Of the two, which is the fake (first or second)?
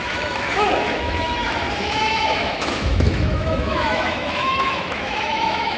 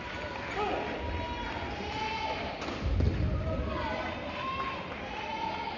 first